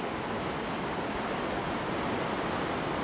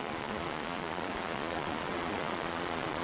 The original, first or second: first